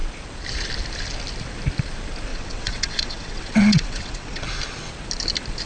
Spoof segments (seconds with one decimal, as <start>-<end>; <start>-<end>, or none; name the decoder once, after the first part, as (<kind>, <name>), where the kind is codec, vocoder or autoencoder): 2.3-4.4 (vocoder, WaveNeXt)